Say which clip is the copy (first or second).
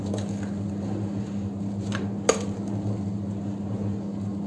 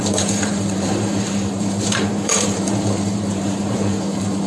second